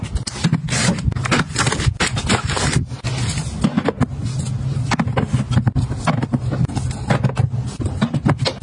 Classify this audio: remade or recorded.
recorded